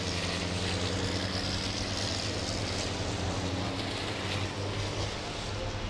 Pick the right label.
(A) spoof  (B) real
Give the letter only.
B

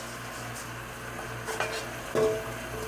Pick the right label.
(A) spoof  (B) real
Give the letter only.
B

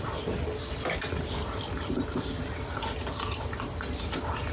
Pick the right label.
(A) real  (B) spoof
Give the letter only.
A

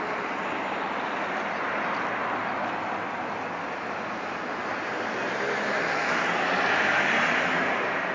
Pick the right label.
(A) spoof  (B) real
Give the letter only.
B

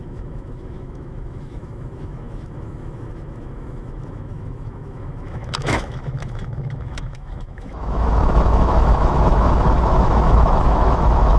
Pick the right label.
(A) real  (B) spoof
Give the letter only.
B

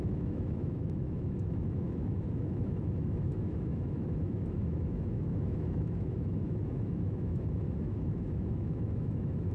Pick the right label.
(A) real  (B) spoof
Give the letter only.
B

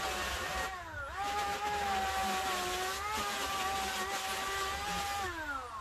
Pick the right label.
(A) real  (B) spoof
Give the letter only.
A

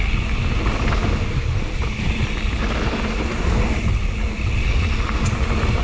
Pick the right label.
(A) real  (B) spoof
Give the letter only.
A